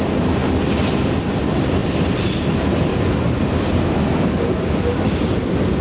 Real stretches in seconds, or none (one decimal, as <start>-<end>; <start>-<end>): 0.0-0.4; 1.3-1.8; 2.4-2.9; 3.9-5.8